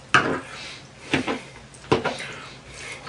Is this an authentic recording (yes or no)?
yes